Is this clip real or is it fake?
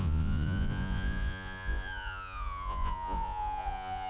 fake